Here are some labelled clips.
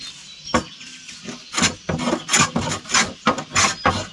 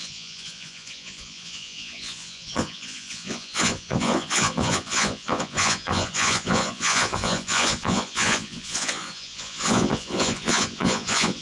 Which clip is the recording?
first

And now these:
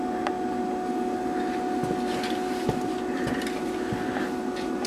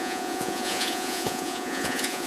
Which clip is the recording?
first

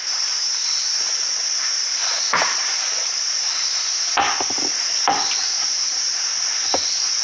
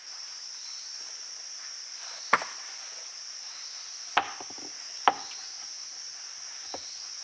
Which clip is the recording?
second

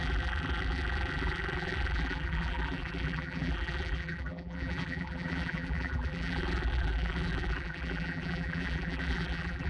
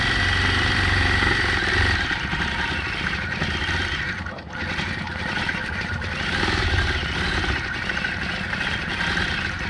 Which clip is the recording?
second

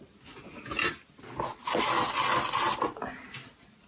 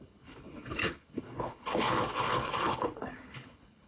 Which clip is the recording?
first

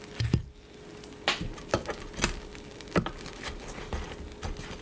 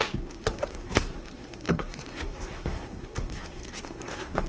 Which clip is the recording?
first